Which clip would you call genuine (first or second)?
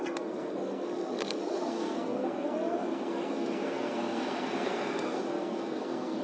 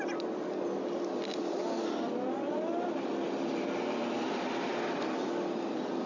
second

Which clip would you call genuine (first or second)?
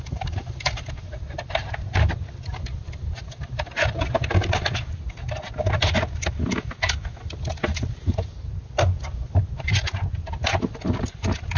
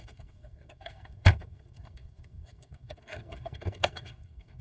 first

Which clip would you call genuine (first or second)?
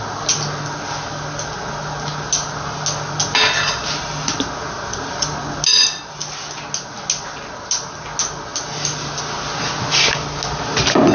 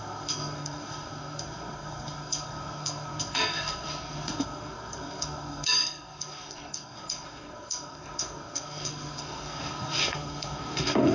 first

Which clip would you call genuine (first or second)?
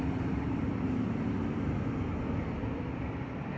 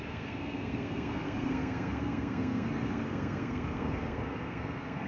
first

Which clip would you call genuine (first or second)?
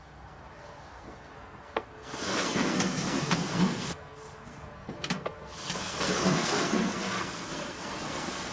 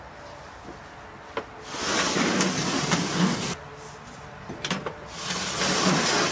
second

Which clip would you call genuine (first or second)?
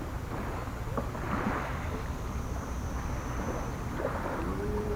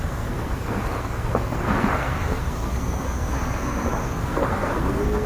first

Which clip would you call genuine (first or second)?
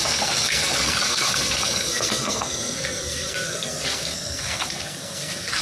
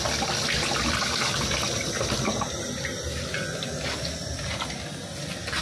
second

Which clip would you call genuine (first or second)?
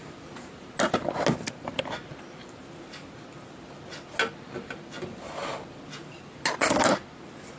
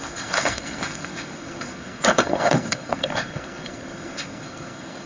first